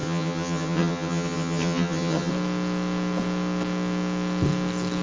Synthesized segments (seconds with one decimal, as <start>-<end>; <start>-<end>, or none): 0.0-2.3